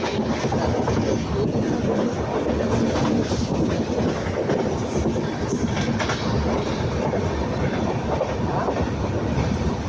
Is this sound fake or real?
real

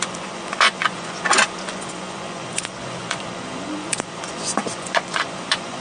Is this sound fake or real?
fake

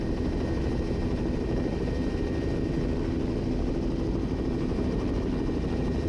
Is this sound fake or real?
real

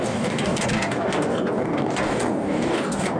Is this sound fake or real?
fake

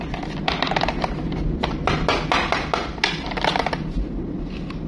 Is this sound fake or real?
real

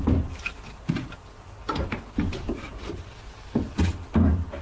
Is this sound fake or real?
real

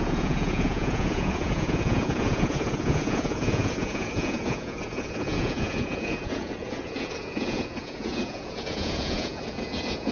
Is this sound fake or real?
fake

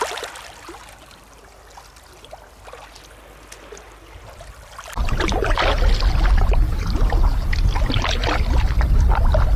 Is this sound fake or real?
real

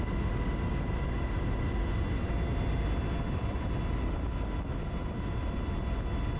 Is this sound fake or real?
real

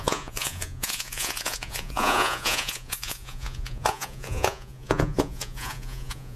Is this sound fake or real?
fake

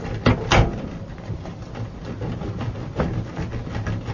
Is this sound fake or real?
real